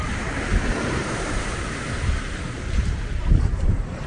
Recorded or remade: remade